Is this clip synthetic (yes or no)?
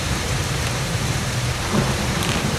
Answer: yes